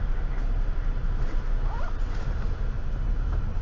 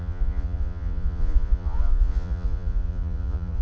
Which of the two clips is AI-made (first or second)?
second